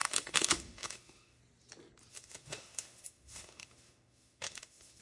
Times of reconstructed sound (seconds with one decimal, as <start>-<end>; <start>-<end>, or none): 0.0-1.4; 2.1-5.0